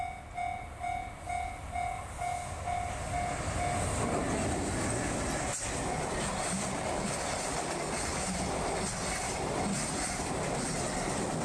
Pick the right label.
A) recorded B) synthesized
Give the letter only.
A